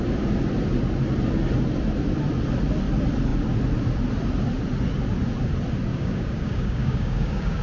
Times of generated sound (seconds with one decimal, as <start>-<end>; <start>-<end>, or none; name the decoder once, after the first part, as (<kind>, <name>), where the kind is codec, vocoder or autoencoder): 5.9-7.6 (codec, DAC)